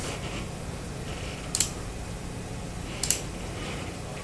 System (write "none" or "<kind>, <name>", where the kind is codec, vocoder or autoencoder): none